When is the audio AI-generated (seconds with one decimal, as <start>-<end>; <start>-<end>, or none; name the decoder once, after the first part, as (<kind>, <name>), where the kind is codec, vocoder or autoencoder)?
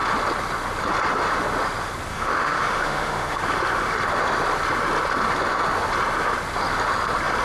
2.1-3.4 (autoencoder, DAC-VAE)